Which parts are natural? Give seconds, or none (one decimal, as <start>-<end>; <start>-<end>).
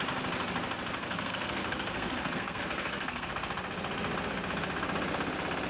0.0-1.0; 3.3-5.7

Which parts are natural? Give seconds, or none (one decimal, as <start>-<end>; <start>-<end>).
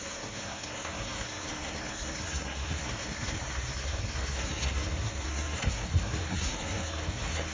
none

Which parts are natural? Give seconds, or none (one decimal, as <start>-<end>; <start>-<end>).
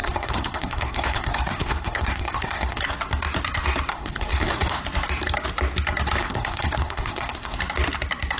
2.8-3.9; 4.8-6.2; 7.6-8.4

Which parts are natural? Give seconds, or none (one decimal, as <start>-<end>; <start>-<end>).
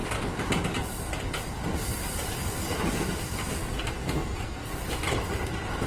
0.0-3.6; 4.8-5.9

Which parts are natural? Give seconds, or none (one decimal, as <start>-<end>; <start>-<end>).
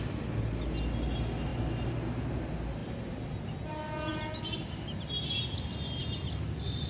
0.0-6.9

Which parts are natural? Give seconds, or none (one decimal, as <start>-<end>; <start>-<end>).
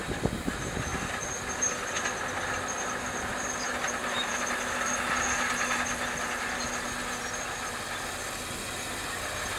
0.0-9.6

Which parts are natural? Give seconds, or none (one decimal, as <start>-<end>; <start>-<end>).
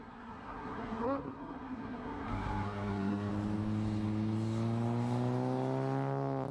3.3-6.5